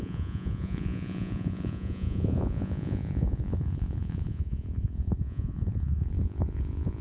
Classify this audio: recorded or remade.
remade